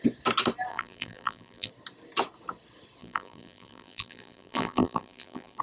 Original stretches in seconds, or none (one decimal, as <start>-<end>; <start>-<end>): 0.0-0.7; 1.7-3.0

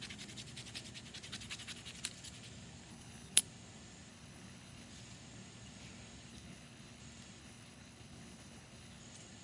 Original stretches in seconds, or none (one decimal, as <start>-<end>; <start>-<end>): 0.0-2.9; 3.4-4.1; 4.9-6.3; 7.0-7.4; 9.0-9.4

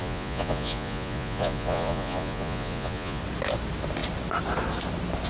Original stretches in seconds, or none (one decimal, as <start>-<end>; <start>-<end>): 3.2-5.3

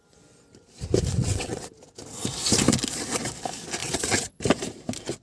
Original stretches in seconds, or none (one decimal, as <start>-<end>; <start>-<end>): 0.0-1.1; 1.7-3.8; 4.4-5.2